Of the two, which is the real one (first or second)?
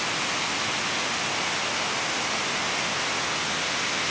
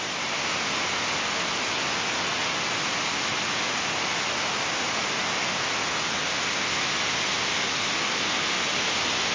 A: first